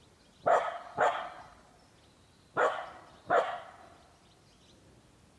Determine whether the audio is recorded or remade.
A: recorded